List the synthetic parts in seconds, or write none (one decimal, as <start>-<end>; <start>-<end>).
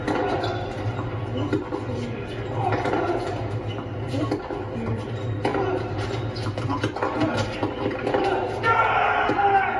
none